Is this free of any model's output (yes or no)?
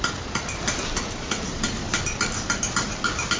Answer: yes